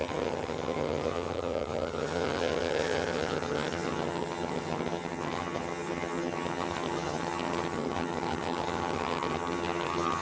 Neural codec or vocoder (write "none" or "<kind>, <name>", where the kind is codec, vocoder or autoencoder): vocoder, HiFi-GAN